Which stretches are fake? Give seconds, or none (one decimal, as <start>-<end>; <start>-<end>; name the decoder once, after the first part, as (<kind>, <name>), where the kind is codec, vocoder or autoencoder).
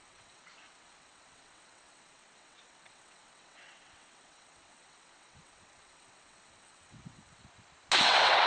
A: 0.0-7.4 (vocoder, WaveNeXt); 8.0-8.5